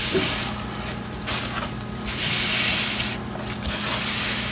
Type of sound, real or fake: real